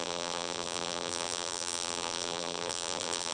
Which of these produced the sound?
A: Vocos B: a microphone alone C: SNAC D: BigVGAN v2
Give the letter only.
D